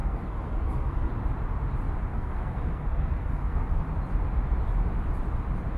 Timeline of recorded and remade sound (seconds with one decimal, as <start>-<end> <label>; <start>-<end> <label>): 0.0-1.1 remade; 1.1-2.1 recorded; 2.1-3.8 remade; 3.8-5.8 recorded